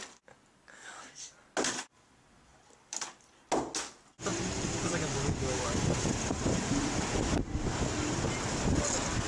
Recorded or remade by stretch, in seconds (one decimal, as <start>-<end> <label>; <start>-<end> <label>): 0.0-2.5 recorded; 2.5-3.5 remade; 3.5-4.3 recorded; 4.3-7.6 remade; 7.6-9.3 recorded